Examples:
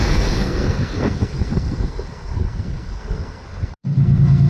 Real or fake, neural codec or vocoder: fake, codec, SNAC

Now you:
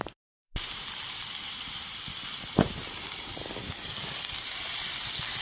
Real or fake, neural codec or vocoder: fake, vocoder, BigVGAN v2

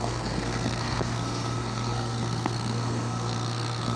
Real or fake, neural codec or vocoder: fake, codec, SNAC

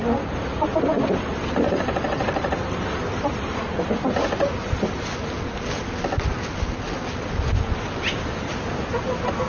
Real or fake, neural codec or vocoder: real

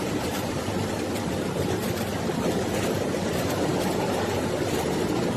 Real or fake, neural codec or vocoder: real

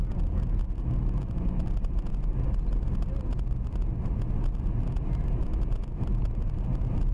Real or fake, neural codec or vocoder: real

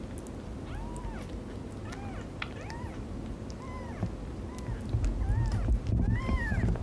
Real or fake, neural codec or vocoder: real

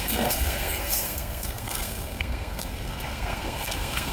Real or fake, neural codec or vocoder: fake, codec, SNAC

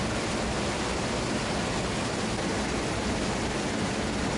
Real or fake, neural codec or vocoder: real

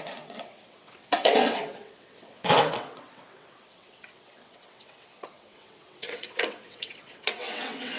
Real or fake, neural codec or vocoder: fake, vocoder, WaveNeXt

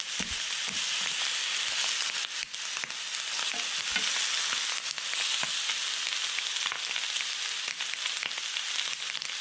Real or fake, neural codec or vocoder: real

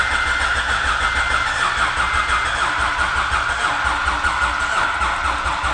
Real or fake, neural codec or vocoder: real